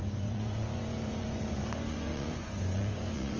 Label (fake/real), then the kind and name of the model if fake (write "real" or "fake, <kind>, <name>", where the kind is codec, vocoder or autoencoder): fake, vocoder, Vocos